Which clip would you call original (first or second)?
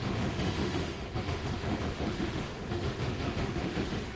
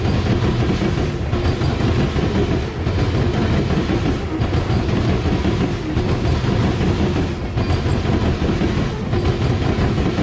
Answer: second